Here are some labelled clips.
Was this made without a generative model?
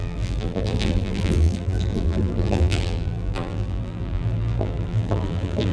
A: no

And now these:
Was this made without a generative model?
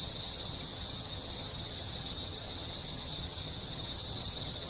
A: no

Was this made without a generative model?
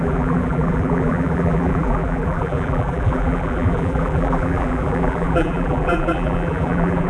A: no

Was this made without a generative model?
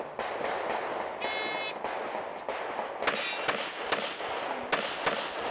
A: yes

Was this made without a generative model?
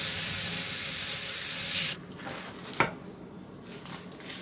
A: yes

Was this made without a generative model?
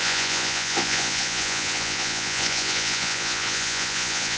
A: no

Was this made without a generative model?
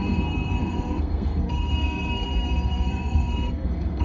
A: no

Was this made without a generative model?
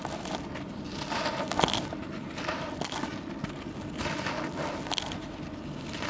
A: yes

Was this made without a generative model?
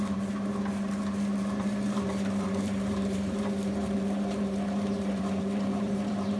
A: no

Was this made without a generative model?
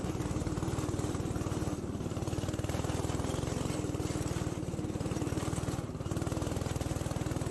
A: yes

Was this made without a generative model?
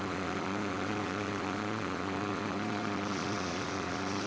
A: no